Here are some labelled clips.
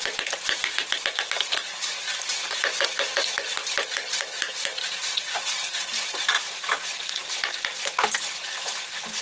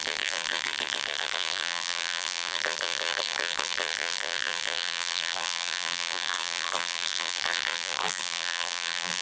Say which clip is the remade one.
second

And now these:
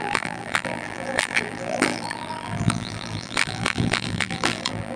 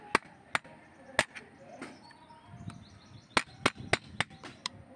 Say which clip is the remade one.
first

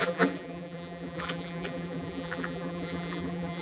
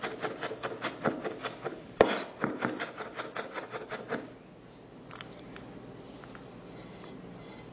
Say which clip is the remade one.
first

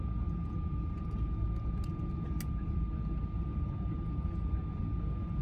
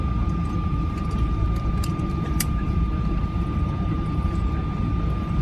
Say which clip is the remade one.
second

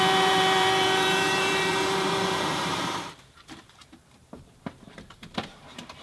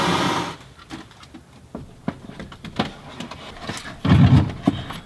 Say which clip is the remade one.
first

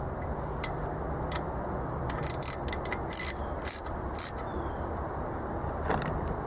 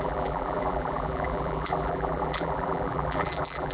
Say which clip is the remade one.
second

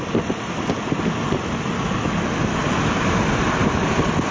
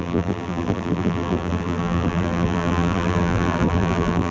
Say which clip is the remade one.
second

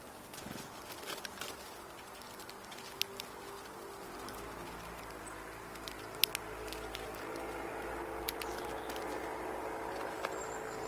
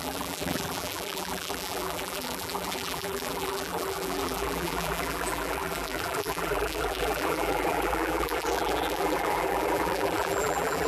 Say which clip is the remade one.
second